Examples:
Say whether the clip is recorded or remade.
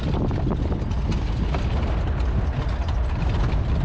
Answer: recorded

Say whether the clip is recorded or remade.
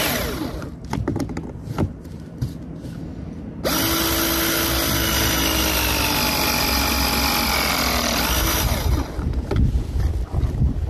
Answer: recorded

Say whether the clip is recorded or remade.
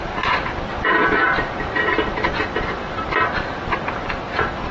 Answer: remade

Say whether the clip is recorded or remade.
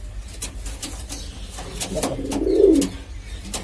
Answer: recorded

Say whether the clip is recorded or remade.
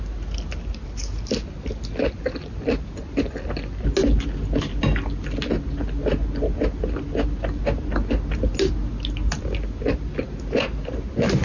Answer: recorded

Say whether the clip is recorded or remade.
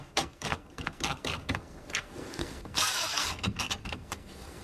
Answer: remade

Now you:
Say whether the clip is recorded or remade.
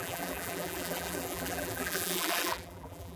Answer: remade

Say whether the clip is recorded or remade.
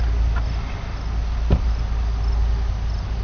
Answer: recorded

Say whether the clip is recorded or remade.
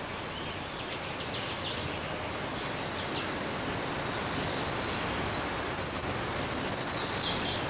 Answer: recorded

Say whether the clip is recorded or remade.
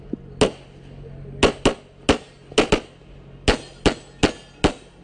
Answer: recorded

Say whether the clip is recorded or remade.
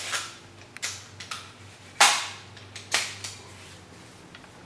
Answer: recorded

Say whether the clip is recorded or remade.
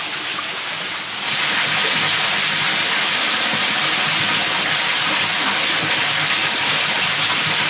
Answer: recorded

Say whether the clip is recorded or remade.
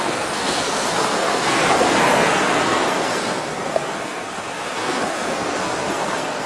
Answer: remade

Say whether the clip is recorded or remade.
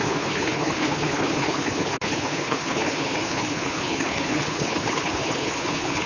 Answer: remade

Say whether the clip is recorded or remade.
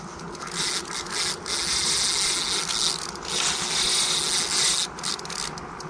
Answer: recorded